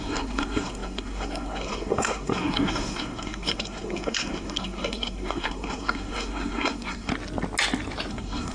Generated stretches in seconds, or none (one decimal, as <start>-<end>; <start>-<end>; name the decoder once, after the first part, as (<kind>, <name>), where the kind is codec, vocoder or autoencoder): 0.0-7.1 (codec, SNAC); 8.1-8.5